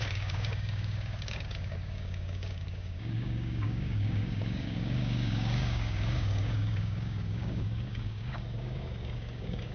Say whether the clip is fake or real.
fake